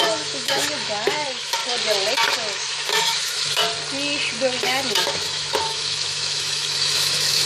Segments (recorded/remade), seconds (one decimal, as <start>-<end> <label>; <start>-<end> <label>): 0.0-1.6 remade; 1.6-2.3 recorded; 2.3-3.6 remade; 3.6-4.6 recorded; 4.6-7.5 remade